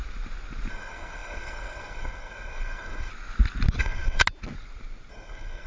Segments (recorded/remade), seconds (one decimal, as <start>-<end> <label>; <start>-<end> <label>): 0.0-0.7 recorded; 0.7-3.1 remade; 3.1-3.8 recorded; 3.8-4.2 remade; 4.2-5.1 recorded; 5.1-5.7 remade